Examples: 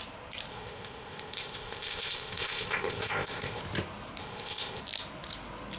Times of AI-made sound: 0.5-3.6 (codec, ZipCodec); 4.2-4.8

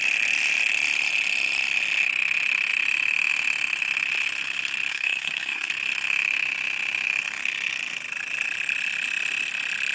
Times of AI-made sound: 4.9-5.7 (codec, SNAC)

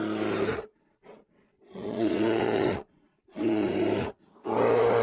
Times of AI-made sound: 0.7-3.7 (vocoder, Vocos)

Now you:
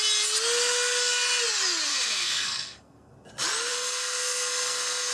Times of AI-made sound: 1.9-3.1 (codec, SNAC); 3.7-5.1

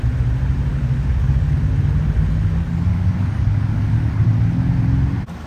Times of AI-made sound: 0.7-1.6 (codec, DAC); 2.9-4.2